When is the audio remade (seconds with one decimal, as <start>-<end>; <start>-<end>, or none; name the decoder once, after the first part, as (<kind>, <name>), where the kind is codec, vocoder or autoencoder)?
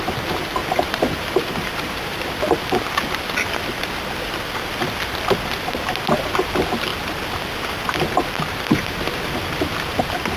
0.6-2.4 (vocoder, BigVGAN v2)